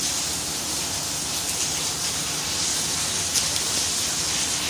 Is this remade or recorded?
recorded